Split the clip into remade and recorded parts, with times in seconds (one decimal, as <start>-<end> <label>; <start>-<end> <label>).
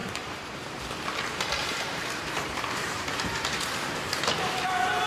0.0-0.8 remade; 0.8-1.6 recorded; 1.6-4.3 remade; 4.3-5.1 recorded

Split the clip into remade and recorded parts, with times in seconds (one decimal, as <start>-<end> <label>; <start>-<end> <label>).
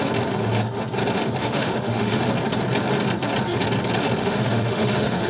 0.0-1.4 recorded; 1.4-2.2 remade; 2.2-4.2 recorded; 4.2-5.3 remade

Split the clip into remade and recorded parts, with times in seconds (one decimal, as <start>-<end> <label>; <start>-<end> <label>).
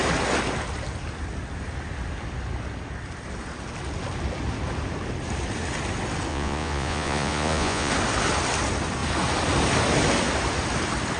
0.0-6.3 recorded; 6.3-7.9 remade; 7.9-11.2 recorded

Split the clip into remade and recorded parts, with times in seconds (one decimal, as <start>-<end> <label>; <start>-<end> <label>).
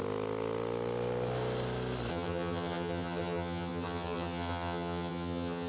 0.0-2.1 recorded; 2.1-5.7 remade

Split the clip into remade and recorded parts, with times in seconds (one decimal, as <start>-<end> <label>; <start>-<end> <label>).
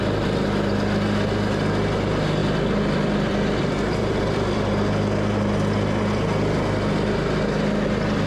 0.0-2.4 recorded; 2.4-4.7 remade; 4.7-8.3 recorded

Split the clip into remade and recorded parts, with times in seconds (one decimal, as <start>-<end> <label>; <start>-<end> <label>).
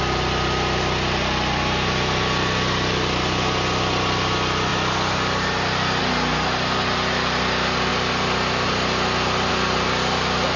0.0-10.6 recorded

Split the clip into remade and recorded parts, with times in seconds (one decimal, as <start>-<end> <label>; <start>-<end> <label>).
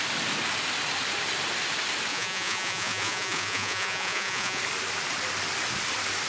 0.0-2.1 recorded; 2.1-4.6 remade; 4.6-6.3 recorded